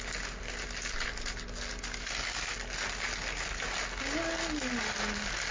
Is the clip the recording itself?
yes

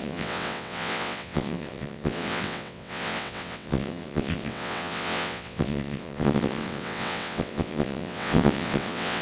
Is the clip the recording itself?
no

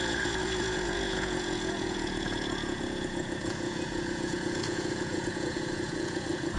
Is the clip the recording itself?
no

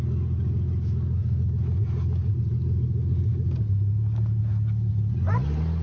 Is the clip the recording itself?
yes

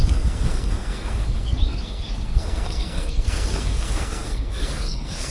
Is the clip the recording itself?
no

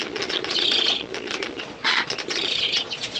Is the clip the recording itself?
no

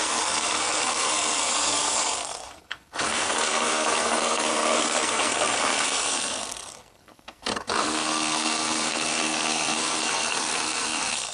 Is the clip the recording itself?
no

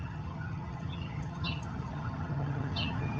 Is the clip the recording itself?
no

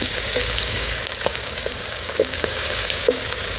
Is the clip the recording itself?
no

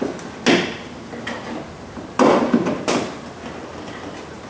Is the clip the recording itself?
yes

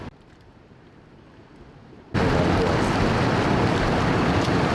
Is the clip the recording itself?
yes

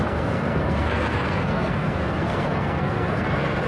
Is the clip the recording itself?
no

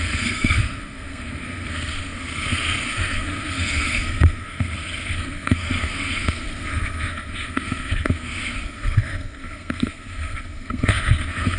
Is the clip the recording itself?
no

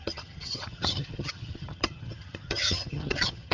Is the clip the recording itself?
no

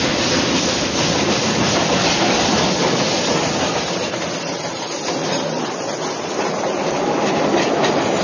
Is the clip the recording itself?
yes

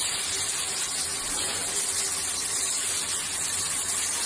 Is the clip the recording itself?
yes